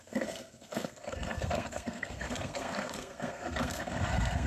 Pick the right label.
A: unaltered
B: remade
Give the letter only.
B